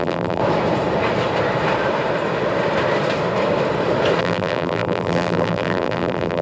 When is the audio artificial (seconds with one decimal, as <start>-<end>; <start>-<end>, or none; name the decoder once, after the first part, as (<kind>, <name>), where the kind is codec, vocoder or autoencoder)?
0.0-0.4 (vocoder, BigVGAN v2); 4.2-6.4